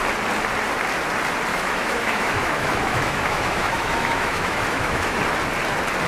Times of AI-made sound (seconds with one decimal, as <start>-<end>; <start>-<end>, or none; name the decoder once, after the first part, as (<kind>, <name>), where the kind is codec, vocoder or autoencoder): 1.5-5.2 (autoencoder, DAC-VAE)